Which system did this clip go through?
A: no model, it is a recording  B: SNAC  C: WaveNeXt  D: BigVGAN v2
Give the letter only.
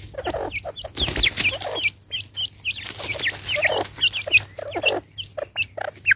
A